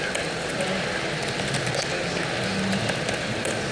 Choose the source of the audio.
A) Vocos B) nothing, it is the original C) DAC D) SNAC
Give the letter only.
B